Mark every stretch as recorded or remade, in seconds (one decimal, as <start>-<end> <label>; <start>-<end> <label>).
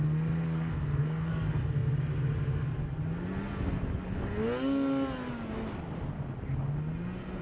0.0-0.4 recorded; 0.4-1.3 remade; 1.3-7.4 recorded